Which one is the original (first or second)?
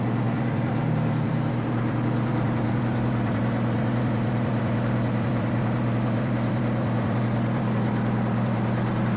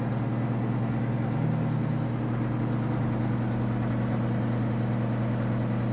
second